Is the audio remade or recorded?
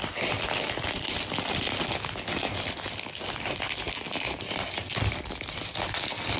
recorded